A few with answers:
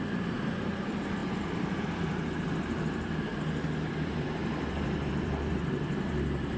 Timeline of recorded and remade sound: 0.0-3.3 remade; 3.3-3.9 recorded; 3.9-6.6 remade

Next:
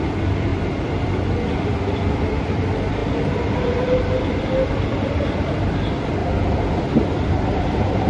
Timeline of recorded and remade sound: 0.0-6.2 remade; 6.2-7.1 recorded; 7.1-8.1 remade

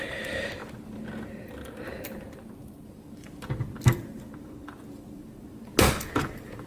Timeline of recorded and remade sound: 0.0-0.6 remade; 0.6-3.6 recorded; 3.6-6.7 remade

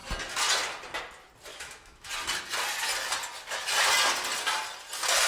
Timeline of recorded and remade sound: 0.0-1.5 recorded; 1.5-2.1 remade; 2.1-5.3 recorded

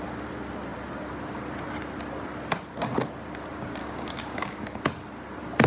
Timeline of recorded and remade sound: 0.0-3.8 recorded; 3.8-4.8 remade; 4.8-5.7 recorded

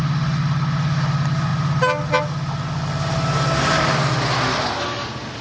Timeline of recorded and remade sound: 0.0-5.4 recorded

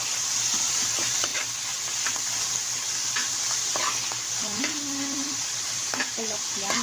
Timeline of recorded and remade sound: 0.0-6.8 recorded

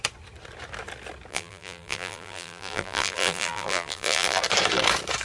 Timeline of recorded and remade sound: 0.0-1.3 recorded; 1.3-4.4 remade; 4.4-5.2 recorded